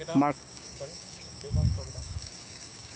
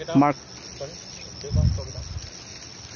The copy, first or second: first